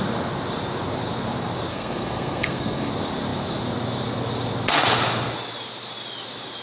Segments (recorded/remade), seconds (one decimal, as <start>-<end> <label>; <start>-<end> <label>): 0.0-1.7 recorded; 1.7-2.9 remade; 2.9-6.6 recorded